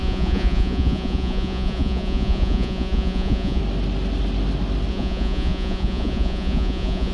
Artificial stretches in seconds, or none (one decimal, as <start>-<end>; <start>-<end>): 0.0-3.6; 4.9-7.1